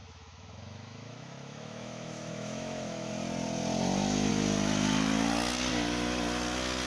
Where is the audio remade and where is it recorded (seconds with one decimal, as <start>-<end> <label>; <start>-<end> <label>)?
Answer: 0.0-3.1 remade; 3.1-6.9 recorded